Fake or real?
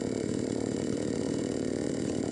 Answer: fake